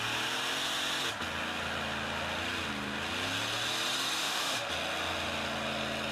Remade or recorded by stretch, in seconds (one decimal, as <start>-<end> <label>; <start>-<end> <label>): 0.0-4.2 recorded; 4.2-4.7 remade; 4.7-6.1 recorded